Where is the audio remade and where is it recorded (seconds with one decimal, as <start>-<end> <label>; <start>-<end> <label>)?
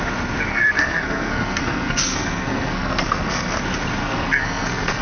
0.0-0.5 recorded; 0.5-3.5 remade; 3.5-4.0 recorded; 4.0-5.0 remade